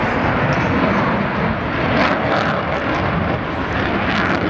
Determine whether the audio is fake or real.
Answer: real